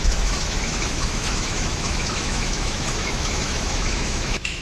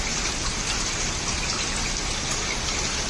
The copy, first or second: first